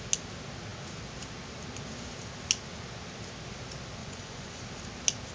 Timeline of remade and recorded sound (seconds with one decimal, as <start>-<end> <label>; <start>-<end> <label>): 0.0-4.0 recorded; 4.0-4.6 remade; 4.6-5.3 recorded